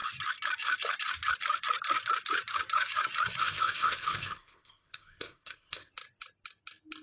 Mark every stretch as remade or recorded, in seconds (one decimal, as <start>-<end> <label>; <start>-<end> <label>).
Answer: 0.0-3.4 recorded; 3.4-5.9 remade; 5.9-7.0 recorded